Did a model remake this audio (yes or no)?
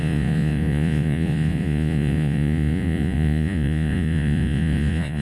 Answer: yes